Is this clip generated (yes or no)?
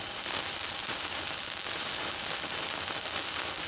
no